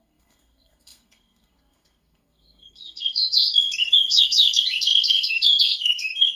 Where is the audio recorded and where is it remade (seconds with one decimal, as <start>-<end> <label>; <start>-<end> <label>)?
0.0-6.4 remade